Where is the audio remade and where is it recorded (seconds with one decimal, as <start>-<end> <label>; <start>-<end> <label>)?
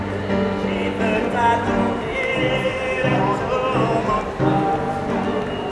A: 0.0-5.7 recorded